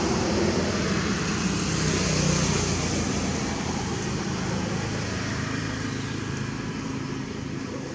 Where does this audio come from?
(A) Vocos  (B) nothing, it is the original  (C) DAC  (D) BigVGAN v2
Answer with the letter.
B